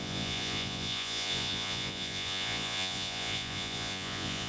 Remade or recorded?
remade